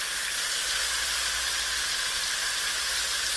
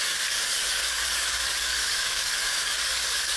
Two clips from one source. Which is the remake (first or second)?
second